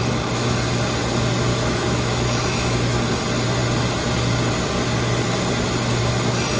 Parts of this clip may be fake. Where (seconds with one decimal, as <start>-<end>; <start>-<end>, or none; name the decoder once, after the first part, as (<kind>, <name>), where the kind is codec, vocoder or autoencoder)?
1.5-3.0 (autoencoder, DAC-VAE)